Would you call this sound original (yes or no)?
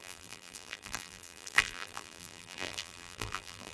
no